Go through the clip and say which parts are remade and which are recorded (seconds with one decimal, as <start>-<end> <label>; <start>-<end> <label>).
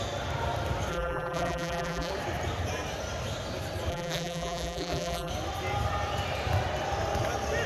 0.0-0.9 recorded; 0.9-2.1 remade; 2.1-3.9 recorded; 3.9-5.3 remade; 5.3-7.7 recorded